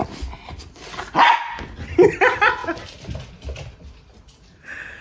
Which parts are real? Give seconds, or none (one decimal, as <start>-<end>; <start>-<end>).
0.0-5.0